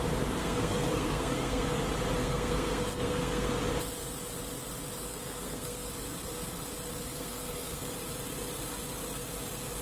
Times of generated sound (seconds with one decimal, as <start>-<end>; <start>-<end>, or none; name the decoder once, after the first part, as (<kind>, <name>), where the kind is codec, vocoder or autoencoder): 0.4-1.8 (codec, SNAC); 2.2-3.5; 5.1-5.9; 7.0-7.9